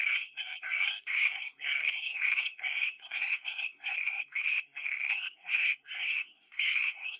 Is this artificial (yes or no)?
yes